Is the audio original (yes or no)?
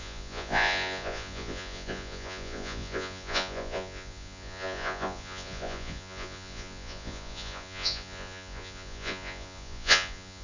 no